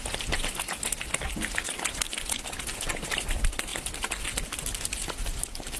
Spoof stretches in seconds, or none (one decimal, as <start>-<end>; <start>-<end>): none